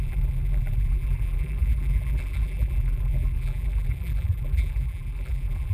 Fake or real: fake